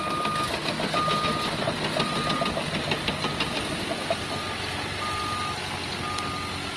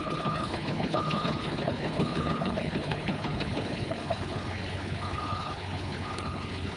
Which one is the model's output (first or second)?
second